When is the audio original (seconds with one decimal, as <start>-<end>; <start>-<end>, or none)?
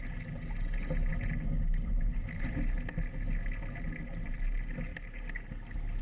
0.0-6.0